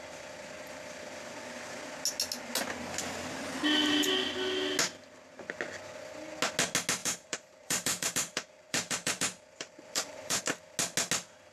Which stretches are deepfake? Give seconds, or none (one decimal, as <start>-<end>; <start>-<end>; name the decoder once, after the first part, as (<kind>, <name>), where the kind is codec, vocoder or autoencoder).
7.0-10.4 (vocoder, BigVGAN v2)